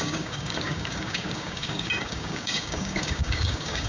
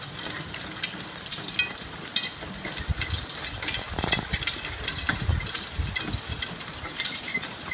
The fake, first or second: first